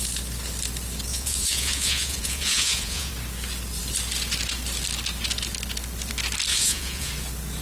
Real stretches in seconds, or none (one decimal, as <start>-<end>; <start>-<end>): 0.0-1.1; 3.1-6.5; 7.1-7.6